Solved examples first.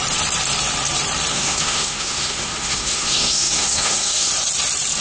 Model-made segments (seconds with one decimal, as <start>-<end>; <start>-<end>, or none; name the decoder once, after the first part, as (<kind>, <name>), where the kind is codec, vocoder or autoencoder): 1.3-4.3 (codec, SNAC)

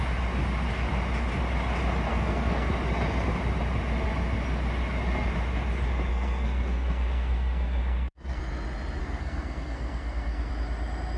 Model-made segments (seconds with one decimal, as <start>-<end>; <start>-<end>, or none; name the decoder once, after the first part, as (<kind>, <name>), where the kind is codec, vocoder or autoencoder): 2.1-2.7 (codec, SNAC); 6.1-8.4; 9.0-10.5

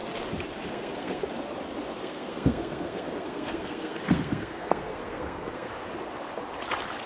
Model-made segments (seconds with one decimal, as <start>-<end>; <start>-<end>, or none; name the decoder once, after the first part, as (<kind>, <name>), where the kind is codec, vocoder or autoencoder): 0.7-1.2 (codec, SNAC); 2.0-5.7